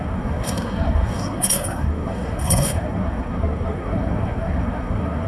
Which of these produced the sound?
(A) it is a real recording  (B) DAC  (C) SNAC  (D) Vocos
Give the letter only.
C